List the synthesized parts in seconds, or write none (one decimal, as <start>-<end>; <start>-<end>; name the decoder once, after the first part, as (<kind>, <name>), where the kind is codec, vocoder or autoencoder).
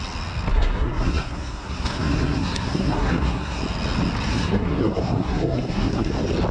0.5-3.6 (codec, SNAC); 4.3-6.1